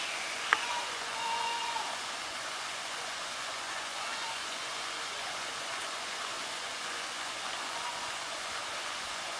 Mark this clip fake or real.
fake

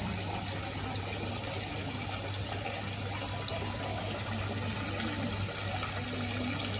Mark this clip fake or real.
real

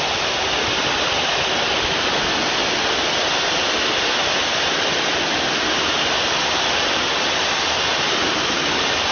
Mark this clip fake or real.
real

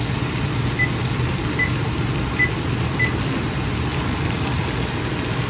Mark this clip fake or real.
real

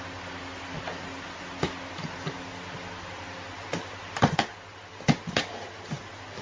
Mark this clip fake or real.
real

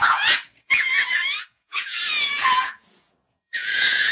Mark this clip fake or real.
fake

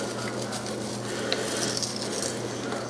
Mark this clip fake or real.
real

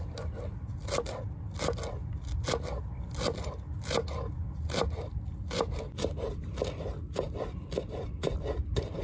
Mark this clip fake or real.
real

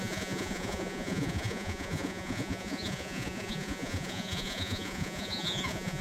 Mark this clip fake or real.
fake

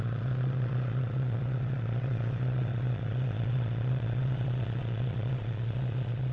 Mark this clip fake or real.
fake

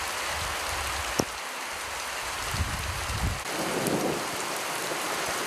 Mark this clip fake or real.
real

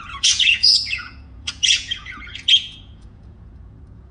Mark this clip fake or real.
fake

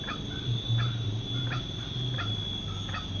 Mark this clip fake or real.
real